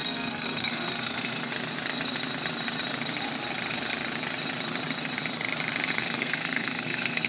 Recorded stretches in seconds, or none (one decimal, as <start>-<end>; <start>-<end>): 1.5-5.9